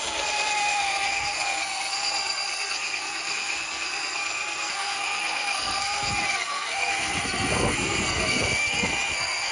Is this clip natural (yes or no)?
no